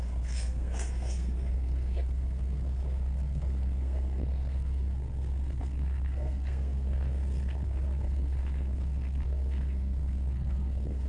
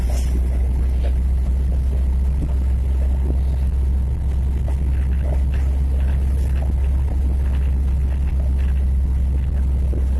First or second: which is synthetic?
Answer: first